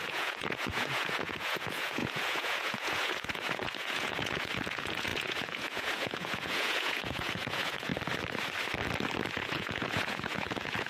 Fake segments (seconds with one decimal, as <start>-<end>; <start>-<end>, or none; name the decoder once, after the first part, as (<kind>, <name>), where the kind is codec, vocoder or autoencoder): 0.0-7.9 (vocoder, Vocos); 9.3-10.9